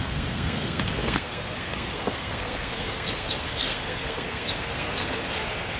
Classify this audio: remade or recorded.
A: remade